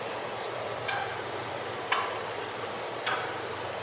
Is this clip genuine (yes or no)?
yes